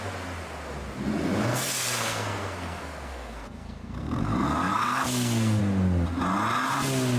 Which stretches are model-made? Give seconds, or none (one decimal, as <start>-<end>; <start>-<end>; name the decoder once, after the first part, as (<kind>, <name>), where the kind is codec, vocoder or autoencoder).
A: 1.5-5.6 (codec, SNAC)